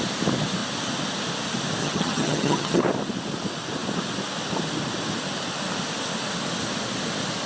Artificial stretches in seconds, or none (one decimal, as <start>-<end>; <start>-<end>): 1.8-2.8